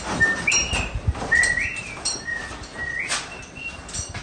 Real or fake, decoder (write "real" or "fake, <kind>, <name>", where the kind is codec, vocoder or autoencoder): real